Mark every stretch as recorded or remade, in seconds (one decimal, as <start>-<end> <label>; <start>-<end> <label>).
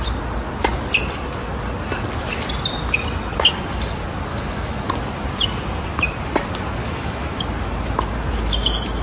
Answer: 0.0-4.3 recorded; 4.3-4.8 remade; 4.8-6.8 recorded; 6.8-7.4 remade; 7.4-9.0 recorded